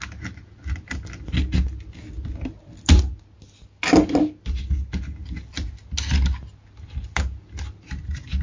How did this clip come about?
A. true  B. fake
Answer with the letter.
A